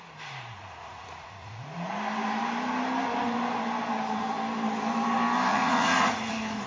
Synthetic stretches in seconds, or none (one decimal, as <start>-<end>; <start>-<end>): 0.8-1.9; 5.5-6.3